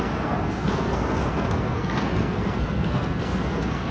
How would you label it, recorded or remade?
remade